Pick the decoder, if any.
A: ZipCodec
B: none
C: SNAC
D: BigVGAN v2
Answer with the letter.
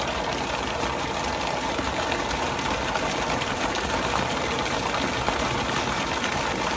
B